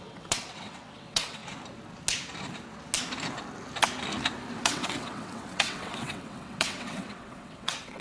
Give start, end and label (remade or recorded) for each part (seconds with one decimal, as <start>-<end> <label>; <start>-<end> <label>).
0.0-1.4 remade; 1.4-4.6 recorded; 4.6-8.0 remade